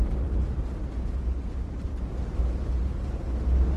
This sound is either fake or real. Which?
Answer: real